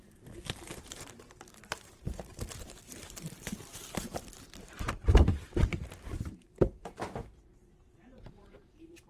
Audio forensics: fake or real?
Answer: fake